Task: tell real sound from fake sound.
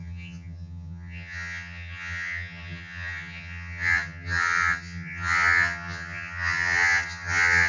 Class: fake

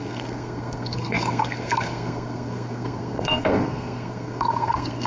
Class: fake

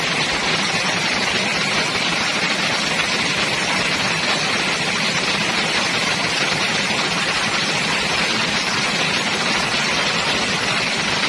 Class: fake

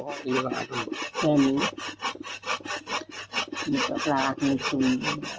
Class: real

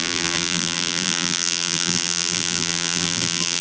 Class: fake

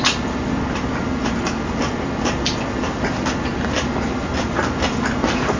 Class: real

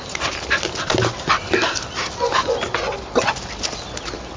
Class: real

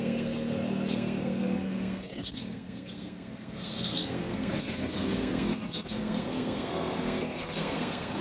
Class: fake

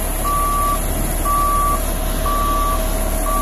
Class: real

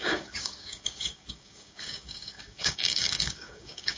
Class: fake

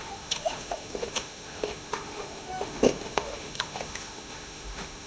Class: fake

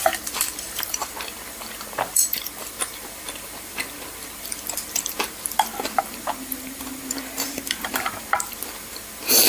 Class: fake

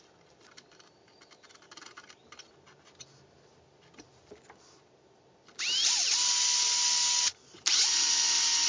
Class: real